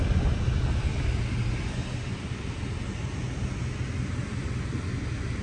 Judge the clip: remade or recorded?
recorded